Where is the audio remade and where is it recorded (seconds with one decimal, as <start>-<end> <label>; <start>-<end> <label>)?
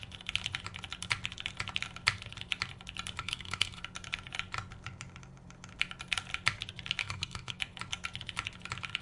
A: 0.0-3.2 recorded; 3.2-3.8 remade; 3.8-7.0 recorded; 7.0-7.6 remade; 7.6-9.0 recorded